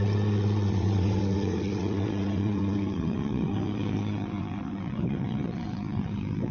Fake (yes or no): yes